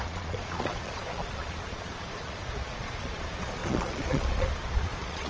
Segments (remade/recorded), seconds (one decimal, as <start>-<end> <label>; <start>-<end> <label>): 0.0-5.3 remade